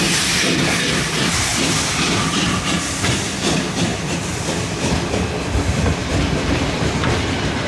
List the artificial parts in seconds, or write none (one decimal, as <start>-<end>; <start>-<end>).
1.5-2.6; 3.9-5.1; 6.0-7.7